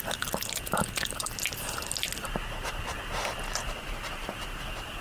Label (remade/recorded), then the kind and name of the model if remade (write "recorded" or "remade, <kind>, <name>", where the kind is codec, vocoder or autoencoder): recorded